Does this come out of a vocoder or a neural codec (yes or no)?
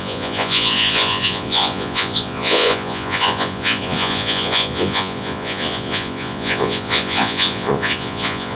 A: yes